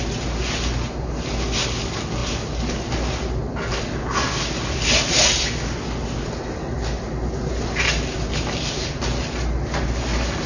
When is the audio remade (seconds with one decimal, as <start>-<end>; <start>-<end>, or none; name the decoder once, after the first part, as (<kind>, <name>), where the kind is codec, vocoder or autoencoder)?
none